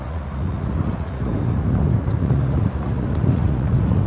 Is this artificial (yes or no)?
yes